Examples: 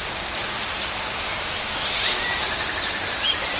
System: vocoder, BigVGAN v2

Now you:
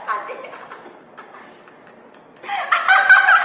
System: none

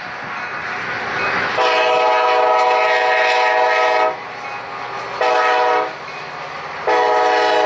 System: none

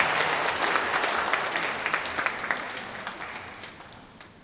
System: none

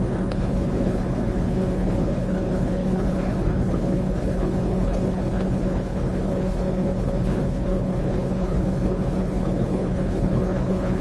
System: codec, HILCodec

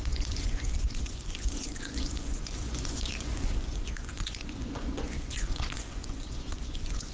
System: vocoder, Vocos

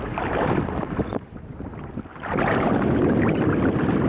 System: vocoder, BigVGAN v2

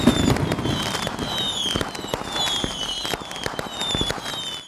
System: none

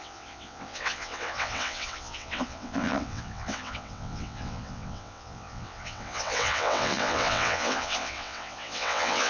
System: vocoder, WaveNeXt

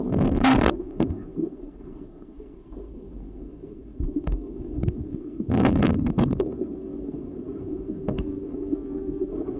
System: codec, SNAC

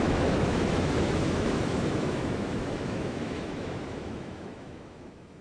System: autoencoder, DAC-VAE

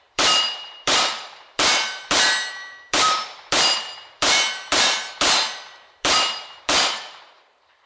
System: vocoder, BigVGAN v2